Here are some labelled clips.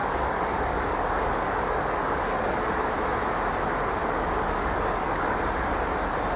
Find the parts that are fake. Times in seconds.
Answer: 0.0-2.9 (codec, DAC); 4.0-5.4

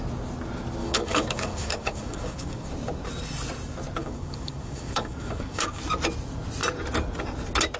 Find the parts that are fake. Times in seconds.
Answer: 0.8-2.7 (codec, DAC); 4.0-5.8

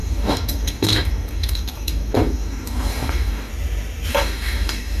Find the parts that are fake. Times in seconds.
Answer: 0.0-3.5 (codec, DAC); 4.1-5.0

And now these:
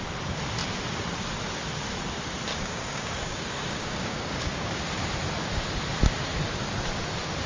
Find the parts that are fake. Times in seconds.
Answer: 2.5-4.8 (codec, DAC)